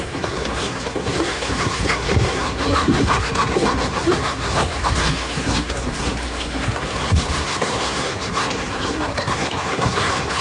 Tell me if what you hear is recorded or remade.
remade